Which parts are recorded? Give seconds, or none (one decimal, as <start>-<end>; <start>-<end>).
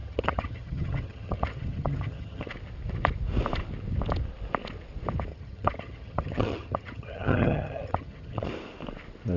2.5-5.3; 8.5-9.4